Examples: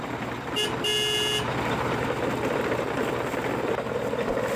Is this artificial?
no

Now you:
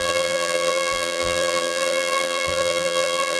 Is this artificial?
yes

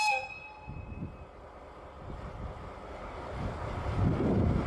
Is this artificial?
no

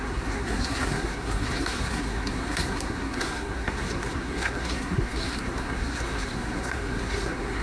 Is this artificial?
yes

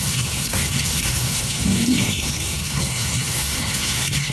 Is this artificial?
yes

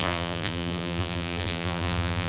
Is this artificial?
yes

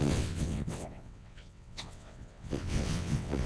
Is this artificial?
yes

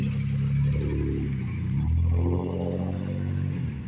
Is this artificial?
no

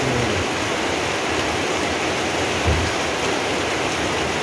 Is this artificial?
no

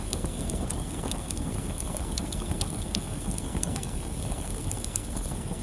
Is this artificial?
yes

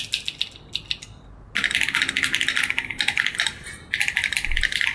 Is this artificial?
no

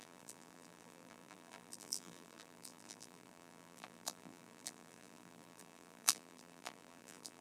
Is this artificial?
yes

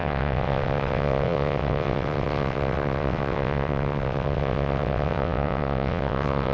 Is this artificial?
yes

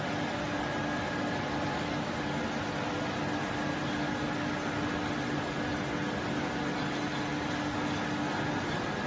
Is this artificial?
no